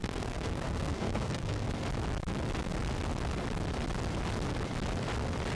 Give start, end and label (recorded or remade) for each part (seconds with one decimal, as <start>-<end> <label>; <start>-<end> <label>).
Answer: 0.0-1.7 remade; 1.7-5.5 recorded